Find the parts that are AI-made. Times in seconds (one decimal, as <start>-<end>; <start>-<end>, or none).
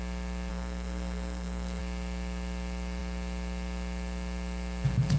0.5-1.8